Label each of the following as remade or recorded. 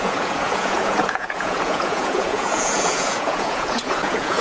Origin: remade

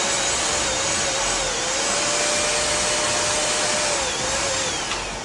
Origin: recorded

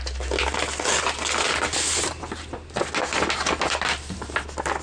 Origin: recorded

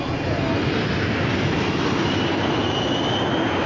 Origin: recorded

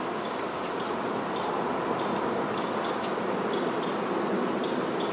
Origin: recorded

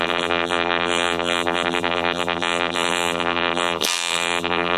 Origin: remade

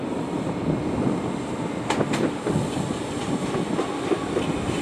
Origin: recorded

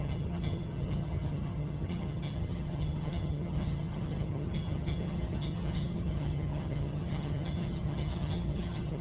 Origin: remade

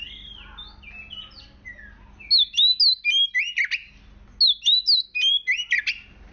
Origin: recorded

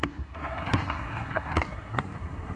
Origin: remade